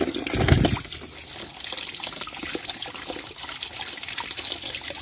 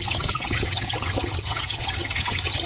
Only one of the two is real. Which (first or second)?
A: first